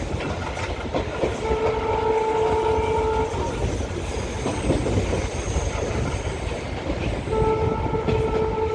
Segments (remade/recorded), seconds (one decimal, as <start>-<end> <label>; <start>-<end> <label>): 0.0-8.7 recorded